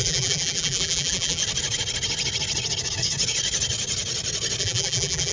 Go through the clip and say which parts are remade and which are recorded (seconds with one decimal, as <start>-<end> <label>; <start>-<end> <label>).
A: 0.0-1.4 remade; 1.4-4.6 recorded; 4.6-5.3 remade